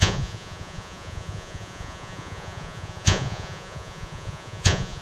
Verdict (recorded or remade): remade